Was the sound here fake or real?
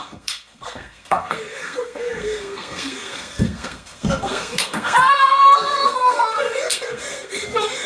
fake